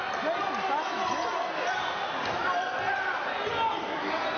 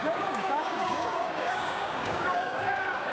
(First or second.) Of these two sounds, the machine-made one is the second